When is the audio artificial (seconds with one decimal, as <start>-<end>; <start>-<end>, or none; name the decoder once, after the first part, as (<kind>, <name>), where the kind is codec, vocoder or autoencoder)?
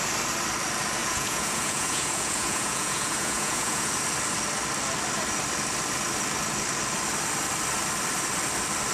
1.0-3.9 (vocoder, Vocos)